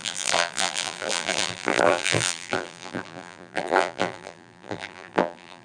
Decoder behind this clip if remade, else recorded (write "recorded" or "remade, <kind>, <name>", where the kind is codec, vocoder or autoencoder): remade, vocoder, BigVGAN v2